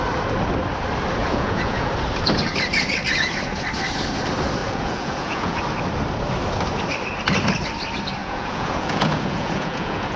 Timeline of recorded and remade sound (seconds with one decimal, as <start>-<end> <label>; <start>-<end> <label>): 0.0-1.2 recorded; 1.2-1.9 remade; 1.9-4.6 recorded; 4.6-5.6 remade; 5.6-8.2 recorded; 8.2-10.2 remade